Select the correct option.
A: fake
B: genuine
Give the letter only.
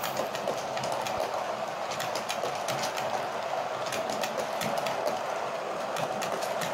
B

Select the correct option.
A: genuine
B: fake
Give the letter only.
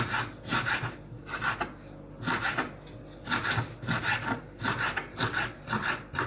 A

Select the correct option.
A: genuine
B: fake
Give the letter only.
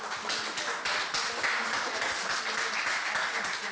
A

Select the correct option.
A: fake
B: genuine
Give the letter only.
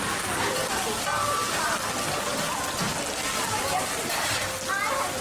B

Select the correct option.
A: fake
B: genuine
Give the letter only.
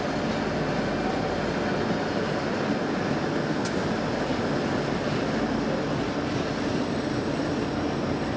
B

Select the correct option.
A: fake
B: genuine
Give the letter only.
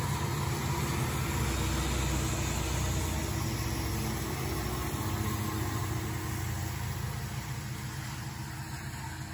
B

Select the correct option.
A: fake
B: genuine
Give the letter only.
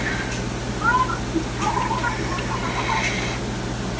B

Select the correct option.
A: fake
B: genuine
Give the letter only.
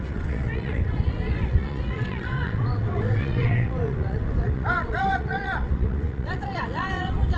A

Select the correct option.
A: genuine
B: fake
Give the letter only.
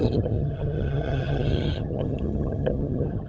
B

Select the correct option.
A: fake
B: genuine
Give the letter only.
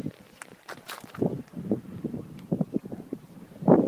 A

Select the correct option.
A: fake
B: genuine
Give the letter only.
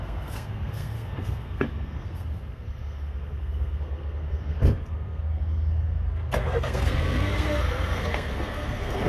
A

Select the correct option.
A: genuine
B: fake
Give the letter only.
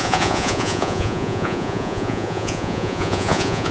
B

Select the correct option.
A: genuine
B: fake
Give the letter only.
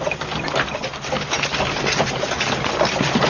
A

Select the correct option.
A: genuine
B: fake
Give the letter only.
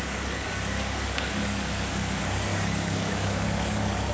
B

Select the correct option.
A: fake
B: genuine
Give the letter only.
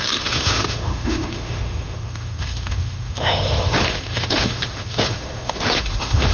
A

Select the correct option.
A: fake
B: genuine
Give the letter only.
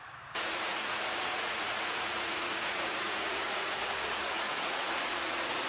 A